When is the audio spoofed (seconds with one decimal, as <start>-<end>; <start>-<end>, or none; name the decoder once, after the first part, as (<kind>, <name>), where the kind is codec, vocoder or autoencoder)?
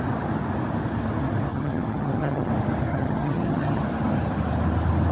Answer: 1.5-2.5 (vocoder, HiFi-GAN); 2.9-3.8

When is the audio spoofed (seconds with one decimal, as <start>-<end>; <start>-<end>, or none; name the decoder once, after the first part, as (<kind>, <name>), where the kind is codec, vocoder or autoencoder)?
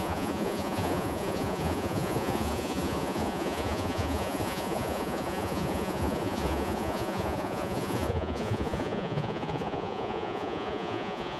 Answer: 0.0-11.4 (vocoder, Vocos)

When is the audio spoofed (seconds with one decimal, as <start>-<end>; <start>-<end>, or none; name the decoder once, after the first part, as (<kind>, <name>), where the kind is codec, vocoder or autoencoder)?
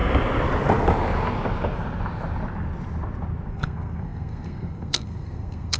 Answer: 3.5-5.8 (codec, SNAC)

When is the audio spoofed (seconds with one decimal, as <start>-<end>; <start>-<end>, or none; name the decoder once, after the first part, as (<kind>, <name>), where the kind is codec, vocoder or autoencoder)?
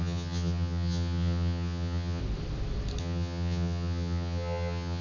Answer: 0.0-2.2 (vocoder, HiFi-GAN); 3.0-5.0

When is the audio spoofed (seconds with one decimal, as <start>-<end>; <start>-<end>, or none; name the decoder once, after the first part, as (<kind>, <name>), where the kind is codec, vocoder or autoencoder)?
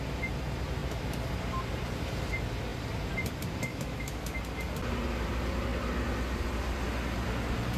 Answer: 3.7-4.4 (autoencoder, DAC-VAE)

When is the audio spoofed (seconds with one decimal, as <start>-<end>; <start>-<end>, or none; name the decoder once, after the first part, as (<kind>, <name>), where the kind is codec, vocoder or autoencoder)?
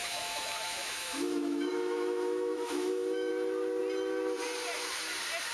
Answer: 0.0-3.3 (autoencoder, DAC-VAE)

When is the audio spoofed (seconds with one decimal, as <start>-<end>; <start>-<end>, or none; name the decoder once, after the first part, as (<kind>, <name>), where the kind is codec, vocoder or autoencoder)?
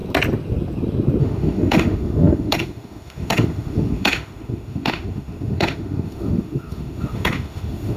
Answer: 1.2-8.0 (autoencoder, DAC-VAE)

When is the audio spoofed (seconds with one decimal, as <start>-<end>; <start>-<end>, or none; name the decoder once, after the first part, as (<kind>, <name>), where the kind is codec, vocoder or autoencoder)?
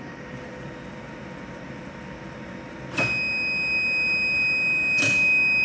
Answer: none